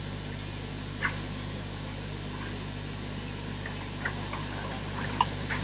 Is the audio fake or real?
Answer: real